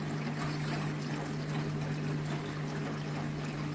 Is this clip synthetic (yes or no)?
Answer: no